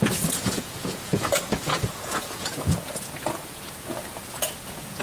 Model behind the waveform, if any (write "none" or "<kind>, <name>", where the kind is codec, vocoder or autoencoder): vocoder, Vocos